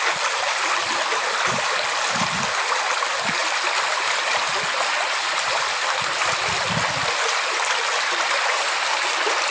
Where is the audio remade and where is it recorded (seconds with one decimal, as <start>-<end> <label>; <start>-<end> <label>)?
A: 0.0-9.5 recorded